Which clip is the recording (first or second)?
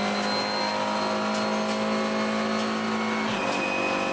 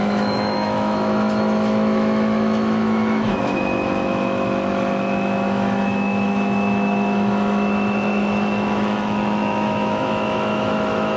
first